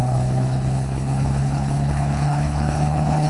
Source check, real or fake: fake